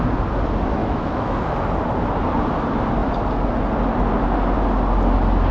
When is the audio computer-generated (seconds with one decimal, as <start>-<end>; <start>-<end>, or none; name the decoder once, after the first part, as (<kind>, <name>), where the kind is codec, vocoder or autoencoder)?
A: 0.8-1.5 (autoencoder, DAC-VAE)

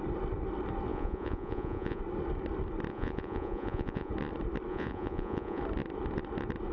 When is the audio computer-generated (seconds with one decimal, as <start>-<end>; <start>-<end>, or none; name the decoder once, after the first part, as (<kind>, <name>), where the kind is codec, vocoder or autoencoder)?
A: 0.9-2.0 (vocoder, Vocos); 2.9-4.1; 4.7-5.6

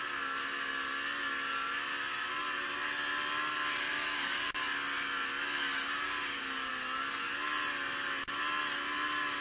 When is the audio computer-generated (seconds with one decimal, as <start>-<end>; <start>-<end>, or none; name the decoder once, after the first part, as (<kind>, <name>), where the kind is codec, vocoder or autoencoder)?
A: 3.9-4.5 (codec, DAC); 5.9-6.7

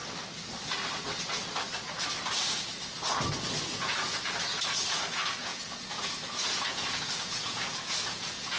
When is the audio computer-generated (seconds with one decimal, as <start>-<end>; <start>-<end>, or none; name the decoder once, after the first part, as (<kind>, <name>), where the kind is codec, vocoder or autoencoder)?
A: 3.7-4.6 (vocoder, Vocos); 5.5-8.6

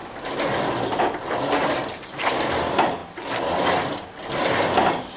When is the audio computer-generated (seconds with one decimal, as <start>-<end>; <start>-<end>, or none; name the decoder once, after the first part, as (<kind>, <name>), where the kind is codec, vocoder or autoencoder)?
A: none

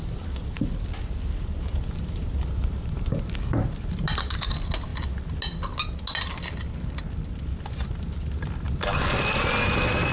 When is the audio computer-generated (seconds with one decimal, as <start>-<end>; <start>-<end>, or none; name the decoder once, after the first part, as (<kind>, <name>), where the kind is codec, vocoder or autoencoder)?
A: none